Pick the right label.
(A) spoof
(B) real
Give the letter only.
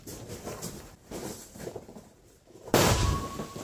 A